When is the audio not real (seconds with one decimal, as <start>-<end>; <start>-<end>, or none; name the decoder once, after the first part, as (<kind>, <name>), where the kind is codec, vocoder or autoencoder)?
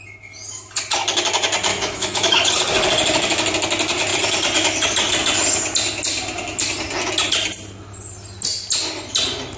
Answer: 1.7-2.5 (autoencoder, DAC-VAE)